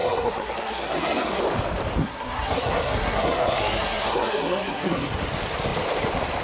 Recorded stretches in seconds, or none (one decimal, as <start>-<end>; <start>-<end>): 1.4-2.0; 5.2-6.4